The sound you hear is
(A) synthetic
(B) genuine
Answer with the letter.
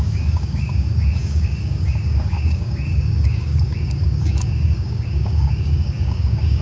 A